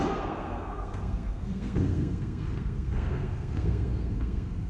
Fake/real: fake